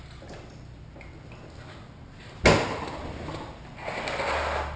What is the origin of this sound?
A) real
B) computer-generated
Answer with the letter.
A